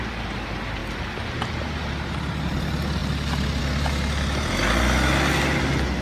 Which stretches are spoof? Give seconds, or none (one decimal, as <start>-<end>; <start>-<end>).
none